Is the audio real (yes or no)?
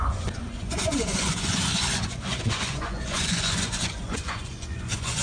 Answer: no